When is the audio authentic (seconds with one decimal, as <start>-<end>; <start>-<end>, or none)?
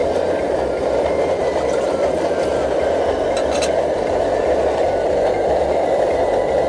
2.5-6.7